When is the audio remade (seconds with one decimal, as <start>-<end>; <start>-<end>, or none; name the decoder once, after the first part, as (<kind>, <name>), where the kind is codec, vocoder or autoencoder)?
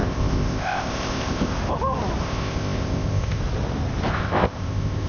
0.0-1.5 (codec, ZipCodec); 2.2-3.4; 4.1-5.1